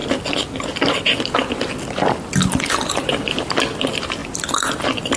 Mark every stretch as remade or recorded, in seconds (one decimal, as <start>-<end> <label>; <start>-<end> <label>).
0.0-5.2 recorded